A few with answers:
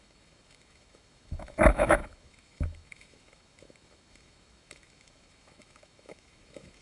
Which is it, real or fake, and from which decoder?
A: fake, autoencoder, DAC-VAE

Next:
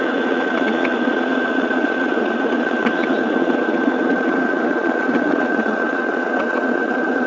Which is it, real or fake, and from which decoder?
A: fake, vocoder, Vocos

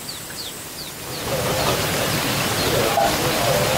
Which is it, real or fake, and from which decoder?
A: real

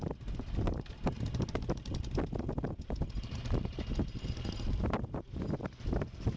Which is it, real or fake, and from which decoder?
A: real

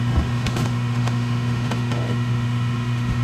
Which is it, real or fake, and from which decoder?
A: fake, autoencoder, DAC-VAE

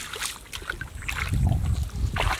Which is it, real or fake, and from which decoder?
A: real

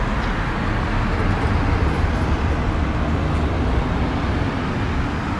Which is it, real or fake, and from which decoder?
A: real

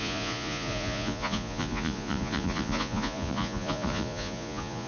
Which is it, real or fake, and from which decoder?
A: fake, vocoder, Vocos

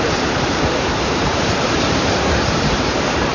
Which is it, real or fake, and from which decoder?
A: fake, vocoder, BigVGAN v2